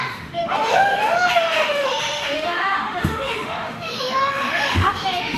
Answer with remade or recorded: remade